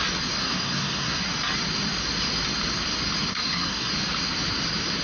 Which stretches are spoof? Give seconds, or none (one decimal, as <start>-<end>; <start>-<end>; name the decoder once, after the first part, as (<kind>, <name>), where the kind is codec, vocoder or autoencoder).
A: 0.4-1.2 (codec, SNAC); 3.3-3.9